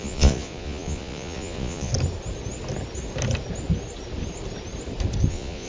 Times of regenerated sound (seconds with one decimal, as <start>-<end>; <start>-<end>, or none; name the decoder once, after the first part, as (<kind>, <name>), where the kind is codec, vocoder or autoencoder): 0.0-1.9 (vocoder, Vocos); 5.3-5.7